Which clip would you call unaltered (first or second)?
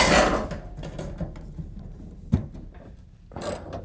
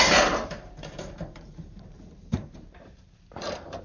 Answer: first